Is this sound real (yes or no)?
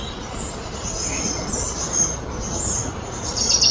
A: yes